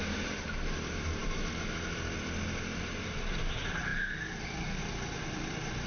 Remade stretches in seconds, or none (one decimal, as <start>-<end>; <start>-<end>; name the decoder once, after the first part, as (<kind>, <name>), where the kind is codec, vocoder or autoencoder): none